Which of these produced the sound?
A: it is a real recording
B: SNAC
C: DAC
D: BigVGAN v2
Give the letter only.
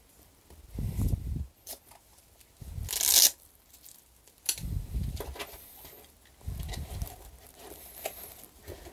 A